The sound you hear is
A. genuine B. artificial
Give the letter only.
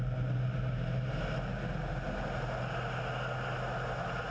A